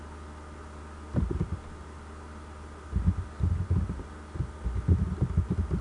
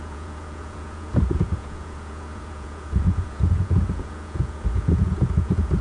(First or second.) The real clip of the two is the first